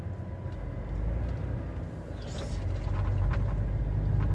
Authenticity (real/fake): real